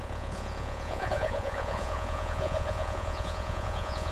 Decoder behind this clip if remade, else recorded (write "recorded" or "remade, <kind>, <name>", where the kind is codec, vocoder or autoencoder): remade, vocoder, Vocos